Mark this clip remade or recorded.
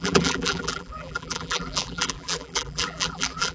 remade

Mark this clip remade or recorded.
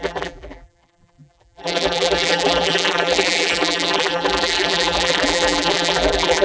remade